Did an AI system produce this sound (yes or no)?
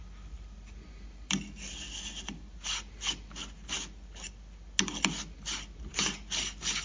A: no